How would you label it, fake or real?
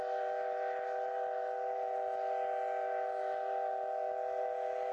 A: real